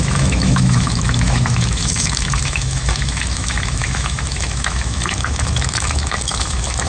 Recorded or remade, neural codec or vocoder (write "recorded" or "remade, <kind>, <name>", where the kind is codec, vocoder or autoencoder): remade, autoencoder, DAC-VAE